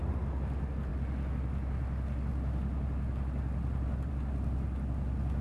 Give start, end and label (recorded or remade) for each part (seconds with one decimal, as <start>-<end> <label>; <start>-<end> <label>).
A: 0.0-5.4 recorded